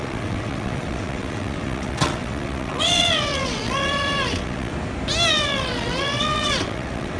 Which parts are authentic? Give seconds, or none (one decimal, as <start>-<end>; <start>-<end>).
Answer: 4.7-5.3